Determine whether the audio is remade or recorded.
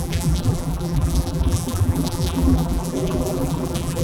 remade